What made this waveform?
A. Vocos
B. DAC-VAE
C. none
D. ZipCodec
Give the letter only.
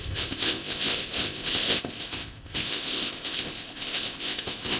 D